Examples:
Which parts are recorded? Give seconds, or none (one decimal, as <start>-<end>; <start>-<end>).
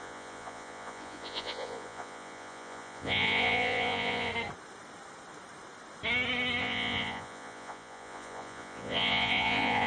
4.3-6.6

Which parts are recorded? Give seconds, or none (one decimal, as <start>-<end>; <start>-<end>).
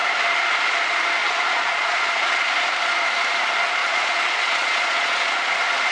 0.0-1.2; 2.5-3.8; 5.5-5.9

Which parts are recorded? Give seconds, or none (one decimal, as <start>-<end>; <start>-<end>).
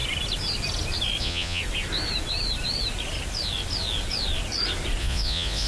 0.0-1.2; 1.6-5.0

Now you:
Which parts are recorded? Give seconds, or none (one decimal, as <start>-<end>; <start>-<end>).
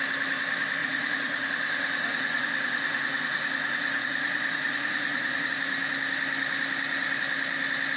0.0-0.8; 5.5-8.0